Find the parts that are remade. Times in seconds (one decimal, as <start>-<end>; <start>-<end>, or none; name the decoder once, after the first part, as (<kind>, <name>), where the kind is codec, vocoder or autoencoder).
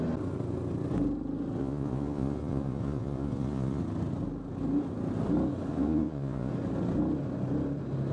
1.6-3.8 (vocoder, Vocos); 5.7-6.5